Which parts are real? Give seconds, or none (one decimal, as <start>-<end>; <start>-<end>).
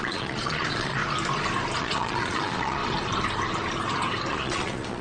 1.0-1.8; 2.8-4.3